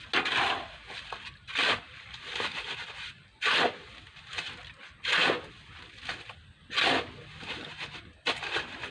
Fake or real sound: real